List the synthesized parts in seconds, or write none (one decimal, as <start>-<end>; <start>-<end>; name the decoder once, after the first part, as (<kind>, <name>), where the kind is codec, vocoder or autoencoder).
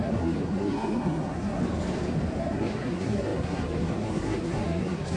0.0-1.6 (codec, SNAC); 2.4-5.2